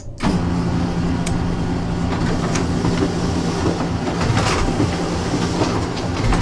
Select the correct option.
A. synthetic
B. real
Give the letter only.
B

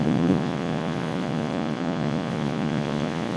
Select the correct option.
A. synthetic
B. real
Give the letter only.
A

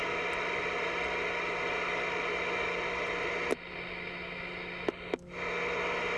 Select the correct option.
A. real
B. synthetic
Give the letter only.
A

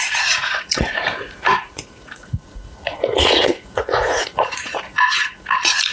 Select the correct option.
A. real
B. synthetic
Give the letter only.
B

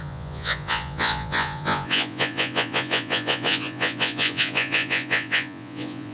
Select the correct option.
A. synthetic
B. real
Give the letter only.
A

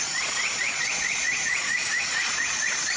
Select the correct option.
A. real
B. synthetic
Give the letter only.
B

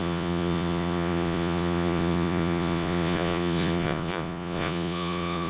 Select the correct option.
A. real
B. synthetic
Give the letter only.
B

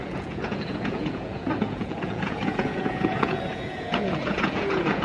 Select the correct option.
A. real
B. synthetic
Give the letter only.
B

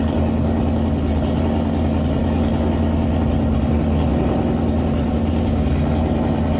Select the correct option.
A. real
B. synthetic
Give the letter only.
A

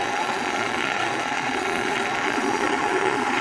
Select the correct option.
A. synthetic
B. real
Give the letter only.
A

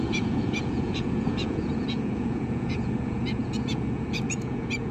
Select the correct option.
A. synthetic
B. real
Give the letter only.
A